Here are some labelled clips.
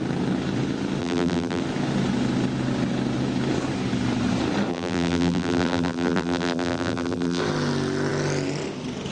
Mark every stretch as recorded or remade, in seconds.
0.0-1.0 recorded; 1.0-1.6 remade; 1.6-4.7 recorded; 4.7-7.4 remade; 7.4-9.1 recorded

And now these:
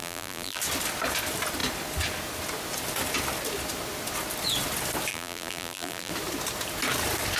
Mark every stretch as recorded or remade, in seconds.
0.0-0.6 remade; 0.6-5.1 recorded; 5.1-6.1 remade; 6.1-7.4 recorded